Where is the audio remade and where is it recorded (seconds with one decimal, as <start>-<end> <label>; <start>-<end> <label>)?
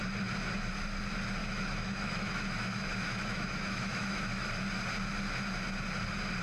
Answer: 0.0-1.4 recorded; 1.4-4.5 remade; 4.5-6.4 recorded